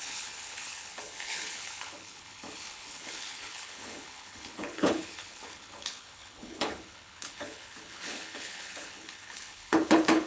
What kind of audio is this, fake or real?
fake